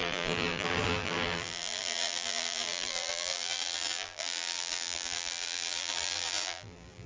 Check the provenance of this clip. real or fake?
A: fake